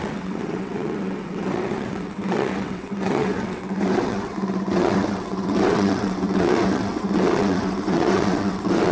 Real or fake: fake